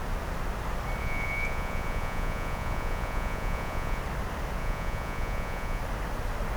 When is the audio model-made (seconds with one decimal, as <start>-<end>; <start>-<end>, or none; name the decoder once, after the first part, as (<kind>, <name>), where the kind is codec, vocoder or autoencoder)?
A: 1.0-4.0 (vocoder, Vocos); 4.6-5.8